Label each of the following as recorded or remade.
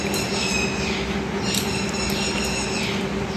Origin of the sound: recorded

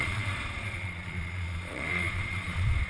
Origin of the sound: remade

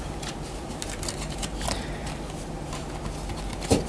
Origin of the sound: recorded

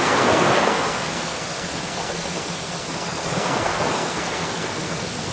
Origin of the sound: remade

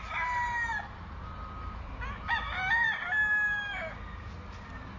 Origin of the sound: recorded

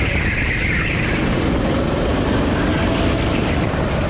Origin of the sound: recorded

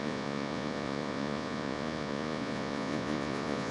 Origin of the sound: remade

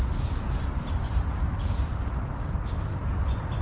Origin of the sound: recorded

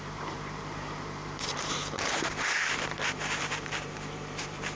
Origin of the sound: remade